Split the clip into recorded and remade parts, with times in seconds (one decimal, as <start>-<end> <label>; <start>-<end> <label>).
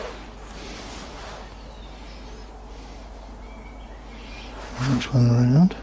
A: 0.0-5.8 recorded